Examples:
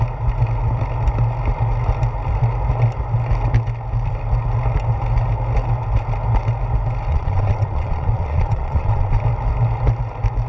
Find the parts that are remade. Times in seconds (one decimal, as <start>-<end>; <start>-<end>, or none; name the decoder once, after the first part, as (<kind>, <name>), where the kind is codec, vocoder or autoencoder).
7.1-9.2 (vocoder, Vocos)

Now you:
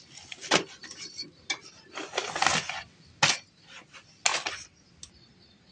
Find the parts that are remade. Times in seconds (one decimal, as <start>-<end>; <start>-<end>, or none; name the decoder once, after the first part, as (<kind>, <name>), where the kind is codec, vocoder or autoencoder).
none

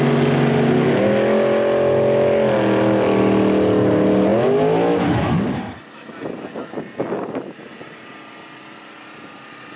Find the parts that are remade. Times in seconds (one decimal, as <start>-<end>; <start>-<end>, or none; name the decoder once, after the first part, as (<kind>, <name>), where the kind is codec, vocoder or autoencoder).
none

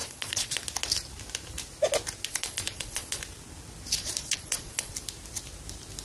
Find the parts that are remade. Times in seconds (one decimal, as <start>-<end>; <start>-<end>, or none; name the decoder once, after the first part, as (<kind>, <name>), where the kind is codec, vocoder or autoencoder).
0.0-0.6 (vocoder, Vocos); 2.3-3.2; 4.0-4.9

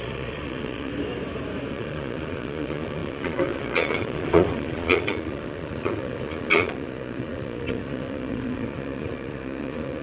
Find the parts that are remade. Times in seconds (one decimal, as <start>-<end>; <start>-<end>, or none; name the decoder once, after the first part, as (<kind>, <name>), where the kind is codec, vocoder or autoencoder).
0.0-0.9 (vocoder, Vocos); 1.7-10.0

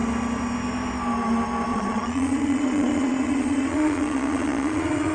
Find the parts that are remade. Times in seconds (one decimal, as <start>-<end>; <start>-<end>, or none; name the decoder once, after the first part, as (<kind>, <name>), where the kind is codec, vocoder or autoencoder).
1.7-5.1 (vocoder, Vocos)